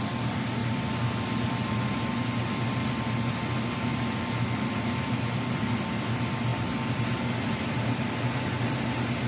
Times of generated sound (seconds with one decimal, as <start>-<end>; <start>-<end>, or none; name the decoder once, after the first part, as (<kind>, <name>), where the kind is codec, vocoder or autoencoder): none